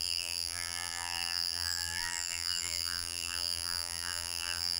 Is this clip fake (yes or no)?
yes